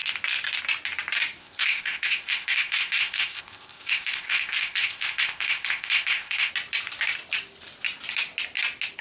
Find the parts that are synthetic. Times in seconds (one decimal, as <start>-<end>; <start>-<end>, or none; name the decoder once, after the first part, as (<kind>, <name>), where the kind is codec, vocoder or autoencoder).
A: 1.4-6.5 (codec, ZipCodec)